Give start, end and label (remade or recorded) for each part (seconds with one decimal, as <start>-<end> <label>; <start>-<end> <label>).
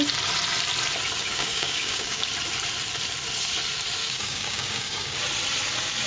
0.0-1.2 recorded; 1.2-2.3 remade; 2.3-4.0 recorded; 4.0-5.2 remade; 5.2-6.1 recorded